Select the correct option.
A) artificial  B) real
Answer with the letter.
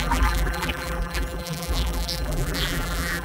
A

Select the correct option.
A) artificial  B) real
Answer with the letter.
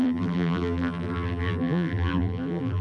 A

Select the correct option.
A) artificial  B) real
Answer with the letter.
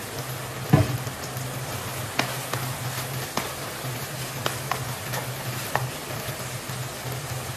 B